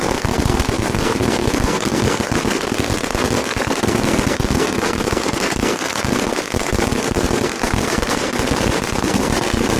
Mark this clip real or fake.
fake